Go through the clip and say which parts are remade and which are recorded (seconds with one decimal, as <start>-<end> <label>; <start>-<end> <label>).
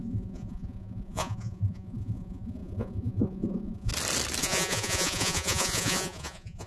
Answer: 0.0-3.9 remade; 3.9-4.4 recorded; 4.4-6.7 remade